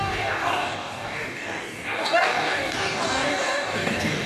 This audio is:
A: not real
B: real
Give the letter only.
A